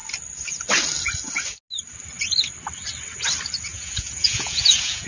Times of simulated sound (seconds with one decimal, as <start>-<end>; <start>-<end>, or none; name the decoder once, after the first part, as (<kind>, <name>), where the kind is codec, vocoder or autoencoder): 3.7-5.1 (vocoder, Vocos)

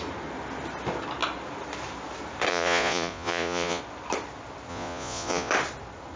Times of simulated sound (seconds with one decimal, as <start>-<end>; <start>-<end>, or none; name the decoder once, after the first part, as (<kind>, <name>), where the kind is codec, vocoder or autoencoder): 2.5-3.8 (vocoder, Vocos); 4.7-5.5